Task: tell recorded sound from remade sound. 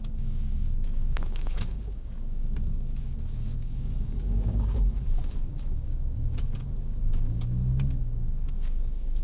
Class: remade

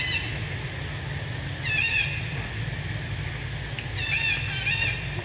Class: recorded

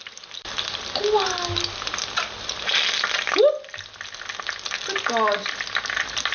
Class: recorded